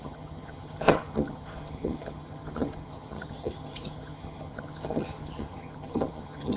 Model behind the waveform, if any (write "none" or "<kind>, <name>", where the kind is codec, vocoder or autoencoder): vocoder, HiFi-GAN